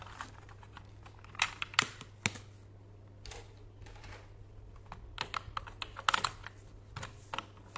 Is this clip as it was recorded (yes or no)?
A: yes